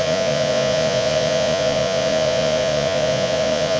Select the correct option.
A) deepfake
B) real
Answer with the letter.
A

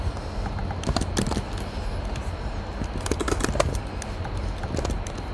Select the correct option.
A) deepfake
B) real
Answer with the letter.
B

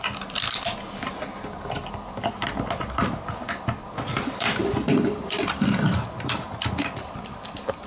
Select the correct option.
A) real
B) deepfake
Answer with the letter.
A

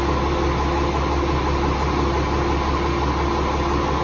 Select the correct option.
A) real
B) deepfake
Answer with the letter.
A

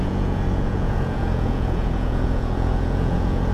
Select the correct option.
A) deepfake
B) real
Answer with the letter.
A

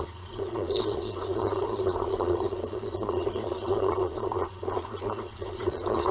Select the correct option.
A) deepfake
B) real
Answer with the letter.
A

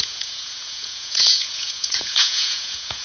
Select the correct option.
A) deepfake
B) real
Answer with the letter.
A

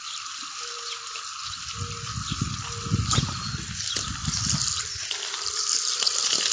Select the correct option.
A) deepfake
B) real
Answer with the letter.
B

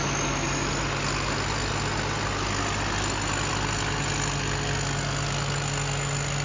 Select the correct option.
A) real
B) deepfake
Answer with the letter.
A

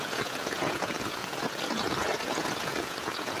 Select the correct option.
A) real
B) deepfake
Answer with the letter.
B